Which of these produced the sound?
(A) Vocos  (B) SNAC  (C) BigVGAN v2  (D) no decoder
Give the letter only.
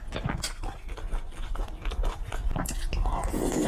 D